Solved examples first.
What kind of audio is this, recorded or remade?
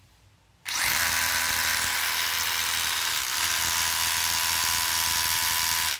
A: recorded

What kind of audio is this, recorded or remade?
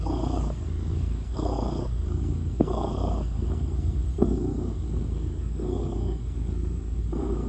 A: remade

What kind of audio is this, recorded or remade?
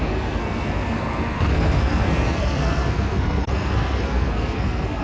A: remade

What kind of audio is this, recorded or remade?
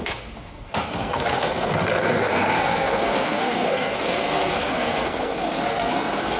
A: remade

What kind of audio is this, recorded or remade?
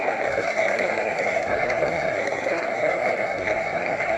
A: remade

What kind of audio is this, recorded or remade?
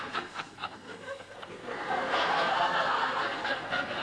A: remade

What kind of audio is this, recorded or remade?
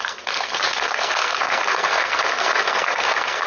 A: remade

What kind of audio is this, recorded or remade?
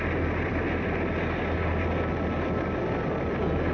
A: recorded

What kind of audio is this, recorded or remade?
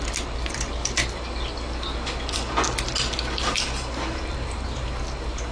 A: recorded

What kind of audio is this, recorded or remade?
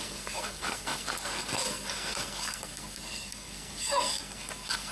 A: remade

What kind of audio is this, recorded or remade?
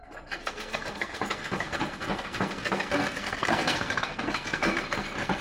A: remade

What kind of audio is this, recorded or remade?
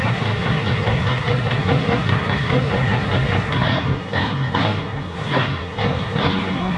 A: remade